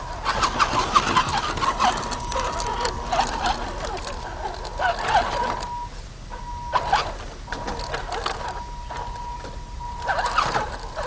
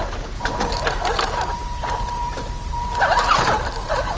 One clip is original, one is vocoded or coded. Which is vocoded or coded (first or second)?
second